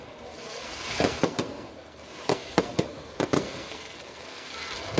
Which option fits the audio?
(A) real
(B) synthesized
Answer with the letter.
B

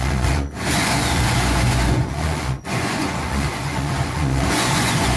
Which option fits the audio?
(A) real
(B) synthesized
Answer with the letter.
B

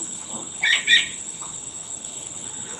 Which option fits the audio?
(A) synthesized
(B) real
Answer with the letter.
A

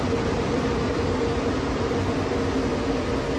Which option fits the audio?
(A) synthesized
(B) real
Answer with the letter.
B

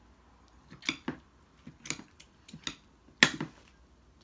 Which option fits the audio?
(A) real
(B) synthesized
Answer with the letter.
A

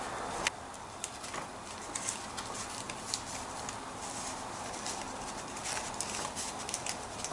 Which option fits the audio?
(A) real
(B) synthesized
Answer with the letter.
A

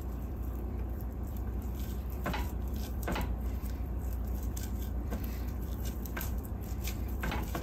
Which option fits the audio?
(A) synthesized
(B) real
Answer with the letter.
A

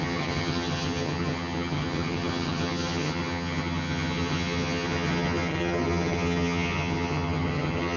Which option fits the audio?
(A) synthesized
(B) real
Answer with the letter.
A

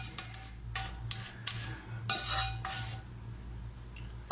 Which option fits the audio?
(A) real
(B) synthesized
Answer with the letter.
A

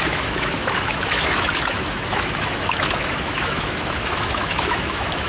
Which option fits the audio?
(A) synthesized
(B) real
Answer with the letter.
A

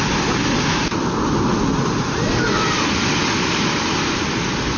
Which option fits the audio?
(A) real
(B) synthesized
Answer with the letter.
B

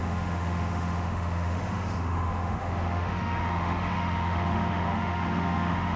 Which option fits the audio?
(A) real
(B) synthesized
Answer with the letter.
B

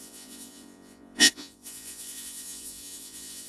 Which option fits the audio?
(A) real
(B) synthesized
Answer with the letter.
B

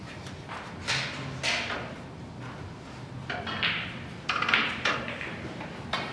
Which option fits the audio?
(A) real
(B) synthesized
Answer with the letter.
A